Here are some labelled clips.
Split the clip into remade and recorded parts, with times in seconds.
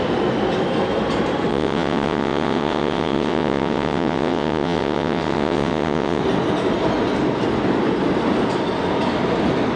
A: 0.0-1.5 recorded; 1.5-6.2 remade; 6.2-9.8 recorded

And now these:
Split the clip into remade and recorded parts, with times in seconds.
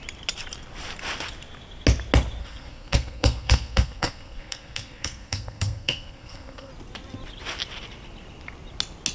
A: 0.0-2.4 recorded; 2.4-6.7 remade; 6.7-9.1 recorded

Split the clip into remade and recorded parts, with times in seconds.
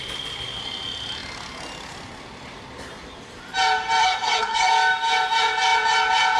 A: 0.0-4.0 recorded; 4.0-4.7 remade; 4.7-6.4 recorded